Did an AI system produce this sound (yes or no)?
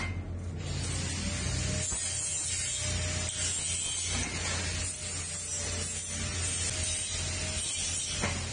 no